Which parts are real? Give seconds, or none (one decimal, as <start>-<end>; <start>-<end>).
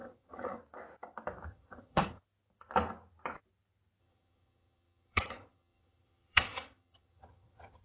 0.6-1.5; 2.2-4.0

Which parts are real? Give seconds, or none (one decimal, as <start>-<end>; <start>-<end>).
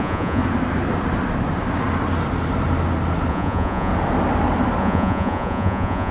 0.4-3.3; 3.9-4.8